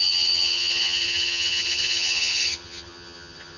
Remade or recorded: remade